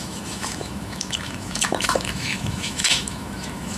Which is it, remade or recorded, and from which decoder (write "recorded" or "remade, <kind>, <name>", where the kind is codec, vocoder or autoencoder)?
remade, autoencoder, DAC-VAE